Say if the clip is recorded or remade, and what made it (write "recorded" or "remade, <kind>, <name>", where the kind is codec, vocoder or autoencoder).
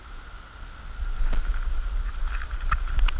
recorded